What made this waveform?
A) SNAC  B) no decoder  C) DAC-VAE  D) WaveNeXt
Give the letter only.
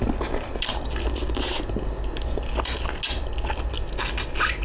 B